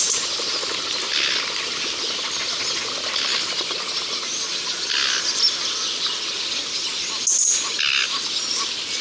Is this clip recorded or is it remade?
recorded